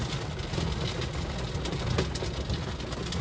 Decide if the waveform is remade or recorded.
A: recorded